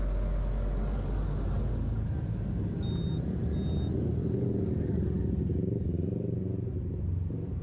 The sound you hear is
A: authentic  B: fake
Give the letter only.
A